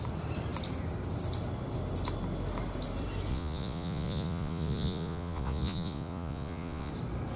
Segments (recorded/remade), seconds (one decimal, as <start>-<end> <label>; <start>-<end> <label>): 0.0-3.3 recorded; 3.3-6.9 remade; 6.9-7.4 recorded

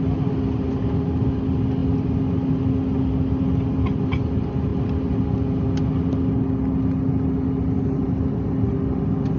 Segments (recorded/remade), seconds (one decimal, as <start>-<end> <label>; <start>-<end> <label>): 0.0-9.4 recorded

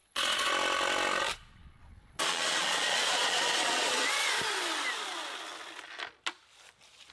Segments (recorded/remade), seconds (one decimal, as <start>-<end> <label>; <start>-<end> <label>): 0.0-0.5 remade; 0.5-1.3 recorded; 1.3-4.3 remade; 4.3-7.1 recorded

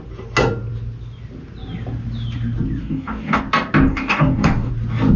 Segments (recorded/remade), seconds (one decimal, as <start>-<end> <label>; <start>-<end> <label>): 0.0-2.8 recorded; 2.8-3.4 remade; 3.4-3.9 recorded; 3.9-4.7 remade; 4.7-5.2 recorded

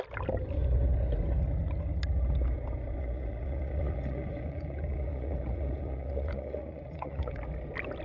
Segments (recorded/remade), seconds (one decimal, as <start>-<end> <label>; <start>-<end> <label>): 0.0-3.0 recorded; 3.0-7.4 remade; 7.4-8.0 recorded